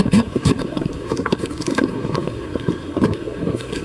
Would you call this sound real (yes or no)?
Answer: no